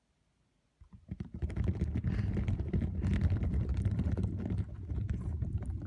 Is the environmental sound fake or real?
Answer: real